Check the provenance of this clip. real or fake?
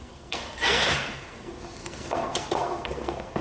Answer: fake